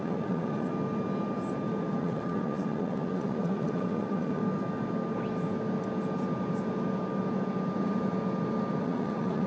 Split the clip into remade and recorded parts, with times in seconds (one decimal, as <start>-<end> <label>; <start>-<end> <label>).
0.0-0.7 remade; 0.7-2.0 recorded; 2.0-4.4 remade; 4.4-8.8 recorded; 8.8-9.5 remade